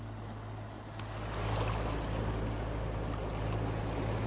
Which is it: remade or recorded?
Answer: recorded